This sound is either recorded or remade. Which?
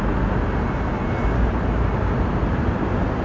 recorded